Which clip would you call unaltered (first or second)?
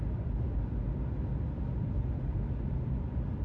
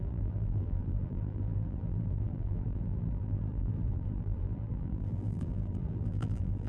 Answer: first